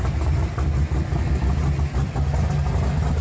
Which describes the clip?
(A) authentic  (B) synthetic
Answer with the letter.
A